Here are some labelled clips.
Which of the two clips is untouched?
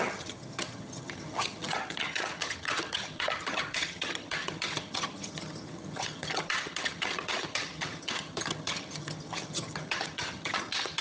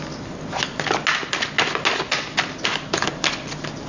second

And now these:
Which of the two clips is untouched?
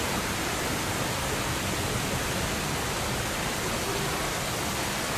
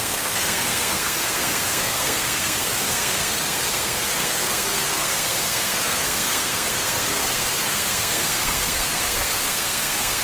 first